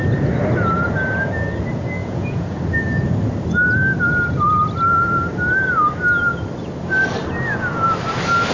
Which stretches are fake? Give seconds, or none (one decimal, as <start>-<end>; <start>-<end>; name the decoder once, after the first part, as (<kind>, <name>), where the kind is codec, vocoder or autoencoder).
2.0-2.6 (vocoder, Vocos)